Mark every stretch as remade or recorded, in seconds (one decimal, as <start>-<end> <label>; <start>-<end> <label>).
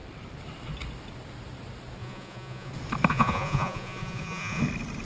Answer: 0.0-2.0 recorded; 2.0-2.7 remade; 2.7-3.1 recorded; 3.1-4.6 remade; 4.6-5.0 recorded